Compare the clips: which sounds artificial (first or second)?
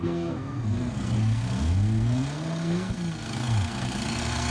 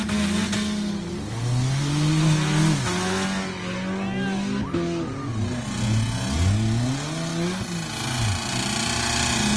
first